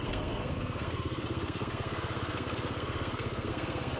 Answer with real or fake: fake